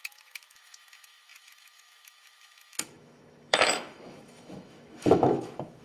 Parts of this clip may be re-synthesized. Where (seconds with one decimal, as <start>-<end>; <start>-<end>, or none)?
0.0-5.8